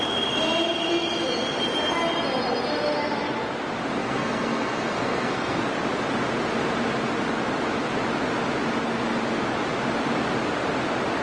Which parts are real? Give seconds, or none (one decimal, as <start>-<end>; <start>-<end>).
0.0-4.0; 5.6-11.2